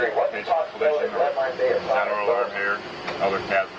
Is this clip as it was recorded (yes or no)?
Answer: yes